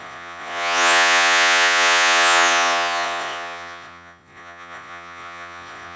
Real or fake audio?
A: fake